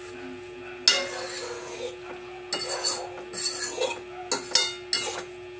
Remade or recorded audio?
recorded